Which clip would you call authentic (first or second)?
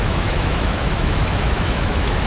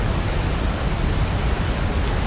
second